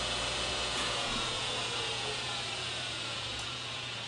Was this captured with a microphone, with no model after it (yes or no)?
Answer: no